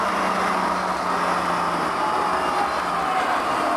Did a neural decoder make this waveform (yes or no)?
no